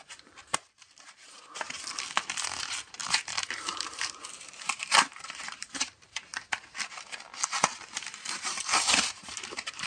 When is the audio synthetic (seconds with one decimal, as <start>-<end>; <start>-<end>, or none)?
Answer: 0.0-1.2; 2.6-6.3; 8.0-9.9